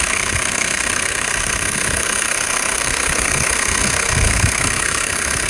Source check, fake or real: fake